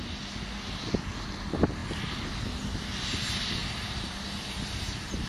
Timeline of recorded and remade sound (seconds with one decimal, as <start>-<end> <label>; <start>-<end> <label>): 0.0-3.6 recorded; 3.6-5.3 remade